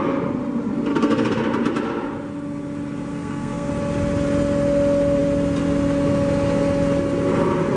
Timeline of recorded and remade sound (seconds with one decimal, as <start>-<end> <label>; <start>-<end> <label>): 0.0-0.9 recorded; 0.9-1.4 remade; 1.4-3.1 recorded; 3.1-3.7 remade; 3.7-7.8 recorded